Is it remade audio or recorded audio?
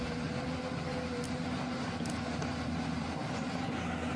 recorded